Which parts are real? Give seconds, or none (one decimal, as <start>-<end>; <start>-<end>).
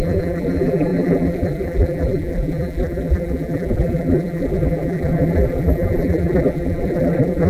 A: none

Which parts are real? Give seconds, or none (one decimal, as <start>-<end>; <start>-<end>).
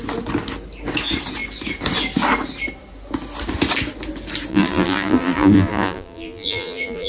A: 0.0-4.5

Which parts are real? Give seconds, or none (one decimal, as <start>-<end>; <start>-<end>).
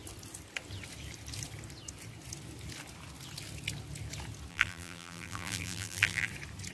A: 0.0-4.5; 6.3-6.7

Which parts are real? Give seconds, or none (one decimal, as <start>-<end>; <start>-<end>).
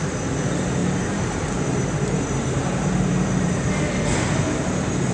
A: 0.0-0.8; 3.7-5.1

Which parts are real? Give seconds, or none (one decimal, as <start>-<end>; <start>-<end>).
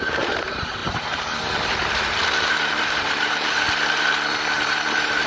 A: none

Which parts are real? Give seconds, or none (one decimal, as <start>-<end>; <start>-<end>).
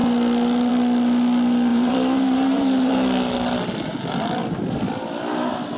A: 0.0-1.7; 2.9-5.8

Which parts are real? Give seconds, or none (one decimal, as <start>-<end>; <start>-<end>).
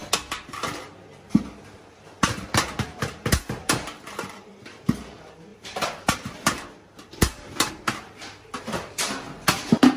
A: 0.0-3.6; 4.9-5.5; 7.7-10.0